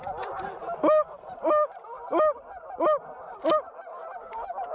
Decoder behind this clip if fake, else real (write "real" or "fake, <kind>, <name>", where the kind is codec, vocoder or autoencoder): real